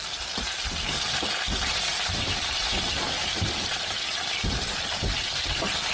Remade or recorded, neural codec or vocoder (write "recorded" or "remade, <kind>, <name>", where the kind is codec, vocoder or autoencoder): recorded